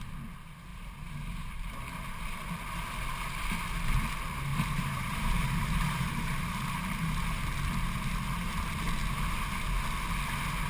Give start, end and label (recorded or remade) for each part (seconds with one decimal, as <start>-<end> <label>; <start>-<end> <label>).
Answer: 0.0-0.7 recorded; 0.7-1.7 remade; 1.7-4.5 recorded; 4.5-7.4 remade; 7.4-10.7 recorded